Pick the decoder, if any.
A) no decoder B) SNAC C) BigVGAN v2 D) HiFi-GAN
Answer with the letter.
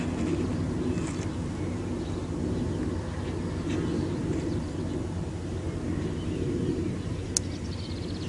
A